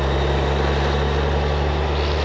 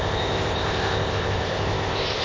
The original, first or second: first